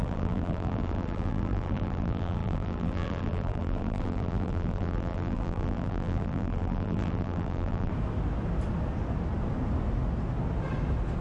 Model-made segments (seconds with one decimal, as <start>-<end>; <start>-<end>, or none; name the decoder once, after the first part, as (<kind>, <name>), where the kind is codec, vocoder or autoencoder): 0.0-7.9 (vocoder, BigVGAN v2)